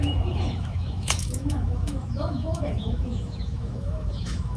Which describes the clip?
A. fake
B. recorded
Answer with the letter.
A